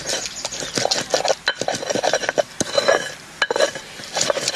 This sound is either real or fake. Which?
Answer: real